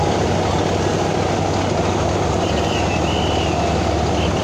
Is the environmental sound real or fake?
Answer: real